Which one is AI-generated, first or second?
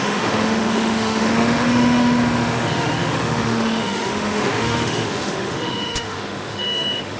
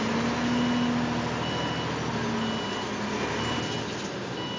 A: first